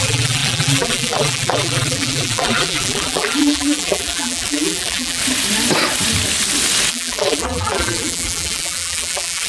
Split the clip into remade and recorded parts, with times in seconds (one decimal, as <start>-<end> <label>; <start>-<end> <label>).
0.0-5.2 remade; 5.2-6.9 recorded; 6.9-9.5 remade